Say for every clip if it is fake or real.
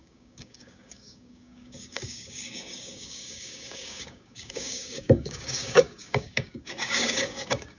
fake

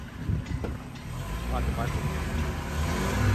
real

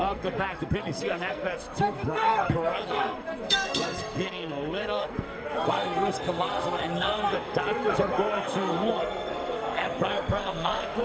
fake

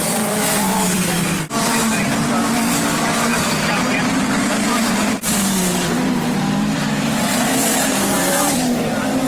fake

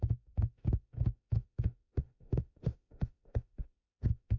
fake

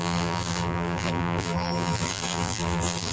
fake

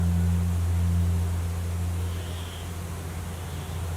real